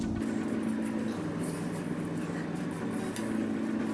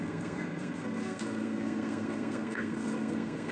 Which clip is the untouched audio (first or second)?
first